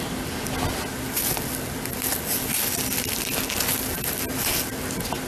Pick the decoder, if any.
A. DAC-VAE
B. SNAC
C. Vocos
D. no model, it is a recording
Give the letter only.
D